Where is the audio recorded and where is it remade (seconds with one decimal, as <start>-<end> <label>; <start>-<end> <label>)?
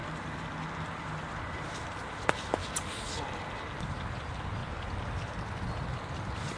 0.0-6.6 recorded